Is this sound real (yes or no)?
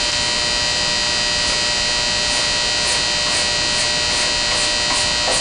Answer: yes